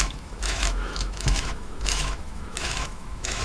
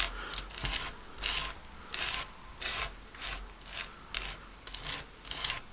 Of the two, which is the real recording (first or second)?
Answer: second